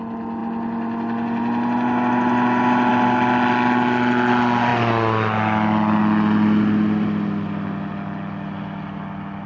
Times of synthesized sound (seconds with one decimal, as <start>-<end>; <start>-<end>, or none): none